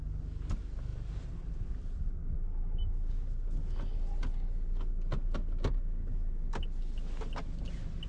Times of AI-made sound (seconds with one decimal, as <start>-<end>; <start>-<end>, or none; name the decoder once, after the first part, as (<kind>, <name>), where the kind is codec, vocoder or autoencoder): none

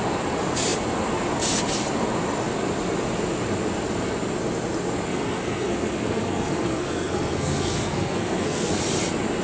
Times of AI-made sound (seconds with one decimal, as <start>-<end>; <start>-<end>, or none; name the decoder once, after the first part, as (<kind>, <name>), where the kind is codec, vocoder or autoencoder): 5.1-8.8 (codec, SNAC)